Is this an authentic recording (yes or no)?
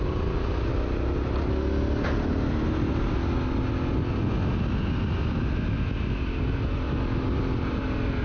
yes